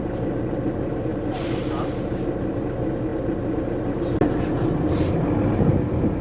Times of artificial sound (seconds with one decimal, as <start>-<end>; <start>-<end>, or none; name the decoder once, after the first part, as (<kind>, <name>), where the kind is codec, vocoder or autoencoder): none